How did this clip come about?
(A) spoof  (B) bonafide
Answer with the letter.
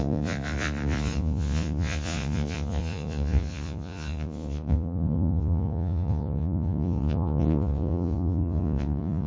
A